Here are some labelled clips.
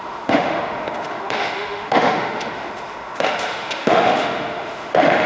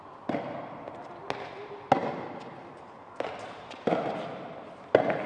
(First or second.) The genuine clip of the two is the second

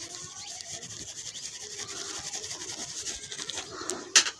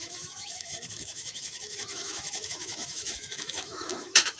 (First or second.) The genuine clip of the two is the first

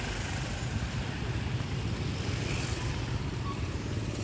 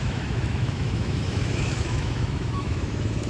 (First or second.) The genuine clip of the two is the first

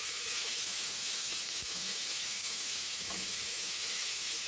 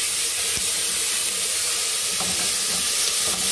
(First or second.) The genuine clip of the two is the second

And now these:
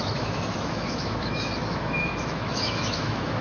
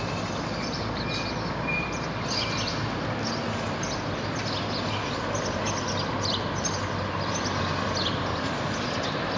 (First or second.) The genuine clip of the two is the second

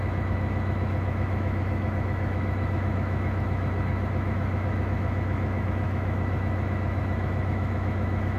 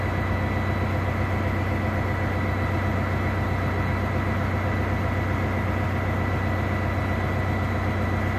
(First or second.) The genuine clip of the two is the second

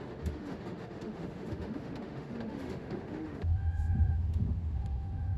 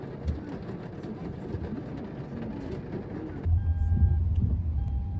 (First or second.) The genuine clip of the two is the second